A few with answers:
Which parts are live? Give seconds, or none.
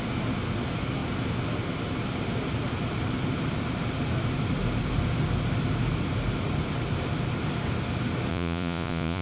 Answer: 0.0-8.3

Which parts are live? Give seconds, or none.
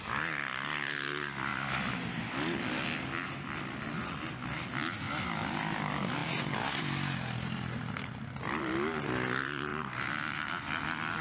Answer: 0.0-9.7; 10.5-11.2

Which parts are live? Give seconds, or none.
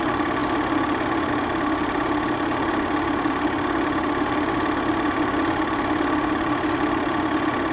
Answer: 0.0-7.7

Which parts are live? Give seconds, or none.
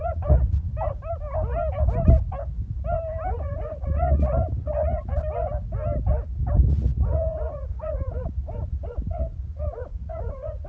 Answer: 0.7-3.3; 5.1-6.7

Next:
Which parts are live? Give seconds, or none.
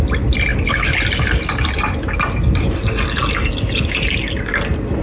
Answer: 0.0-5.0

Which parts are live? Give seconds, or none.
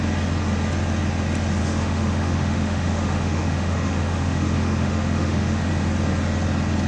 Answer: 0.0-1.6; 5.7-6.9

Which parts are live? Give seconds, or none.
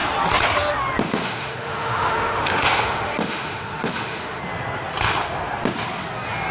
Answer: 0.0-1.1; 4.4-6.5